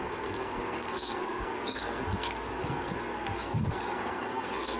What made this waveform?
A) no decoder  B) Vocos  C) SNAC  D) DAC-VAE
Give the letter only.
C